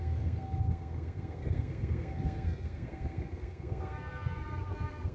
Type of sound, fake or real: fake